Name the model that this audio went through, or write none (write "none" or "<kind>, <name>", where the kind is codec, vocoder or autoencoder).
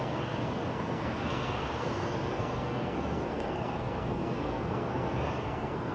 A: codec, SNAC